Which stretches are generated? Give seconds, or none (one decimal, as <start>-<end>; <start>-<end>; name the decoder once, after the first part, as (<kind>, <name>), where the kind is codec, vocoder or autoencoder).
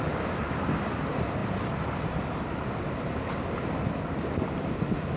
none